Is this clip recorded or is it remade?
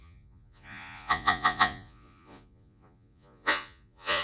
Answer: remade